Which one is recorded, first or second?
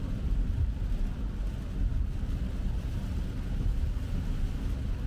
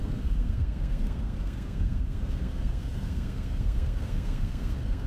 first